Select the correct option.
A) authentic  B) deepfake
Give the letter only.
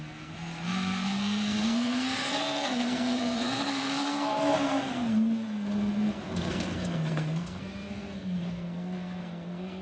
B